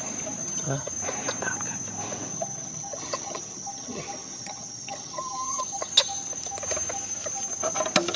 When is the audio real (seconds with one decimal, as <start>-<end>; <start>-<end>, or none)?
0.0-0.4; 0.9-2.3; 5.9-8.2